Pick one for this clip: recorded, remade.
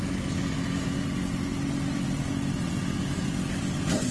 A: recorded